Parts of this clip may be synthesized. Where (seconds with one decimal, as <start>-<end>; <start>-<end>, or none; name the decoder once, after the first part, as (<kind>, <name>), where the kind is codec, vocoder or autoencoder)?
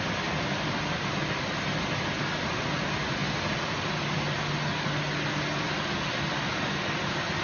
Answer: none